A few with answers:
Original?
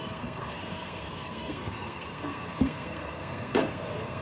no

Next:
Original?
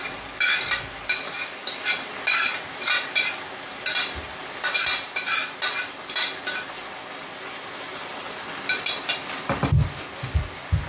yes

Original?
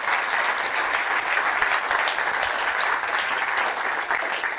yes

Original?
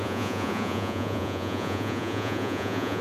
no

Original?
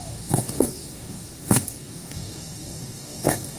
no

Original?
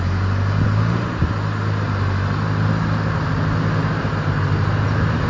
yes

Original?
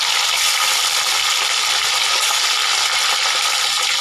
yes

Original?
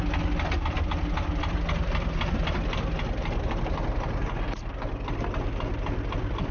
yes